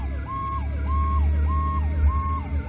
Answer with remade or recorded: recorded